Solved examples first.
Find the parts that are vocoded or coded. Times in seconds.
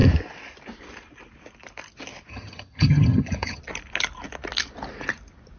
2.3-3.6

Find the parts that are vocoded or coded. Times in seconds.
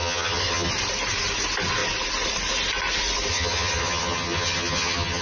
0.0-0.7; 3.3-5.2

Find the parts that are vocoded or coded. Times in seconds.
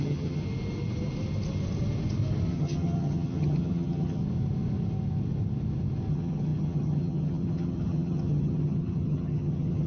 0.0-0.4; 2.5-4.2; 6.1-9.9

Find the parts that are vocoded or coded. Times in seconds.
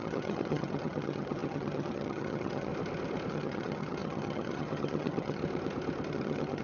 0.0-2.7; 3.3-5.4; 6.1-6.6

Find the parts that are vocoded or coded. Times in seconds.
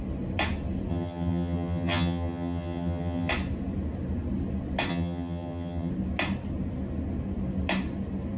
0.9-3.3; 4.9-5.9